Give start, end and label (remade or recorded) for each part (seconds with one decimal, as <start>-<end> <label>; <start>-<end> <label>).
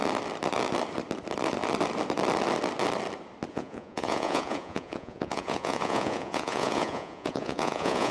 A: 0.0-3.5 recorded; 3.5-8.1 remade